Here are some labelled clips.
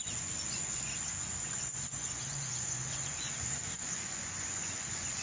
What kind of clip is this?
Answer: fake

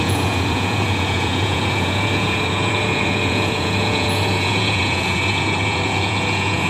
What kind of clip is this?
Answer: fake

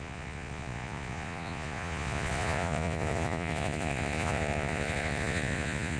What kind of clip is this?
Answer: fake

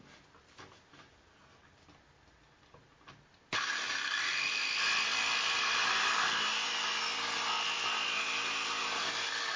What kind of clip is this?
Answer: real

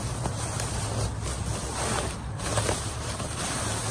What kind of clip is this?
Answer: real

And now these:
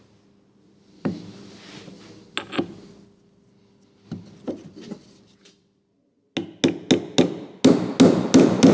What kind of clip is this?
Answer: real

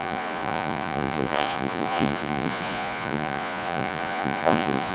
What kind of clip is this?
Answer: fake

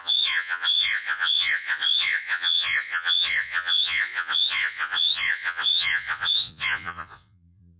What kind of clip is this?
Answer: fake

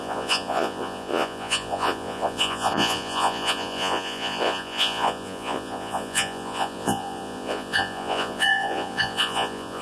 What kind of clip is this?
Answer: fake